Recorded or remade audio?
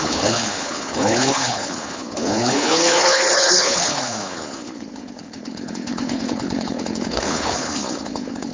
remade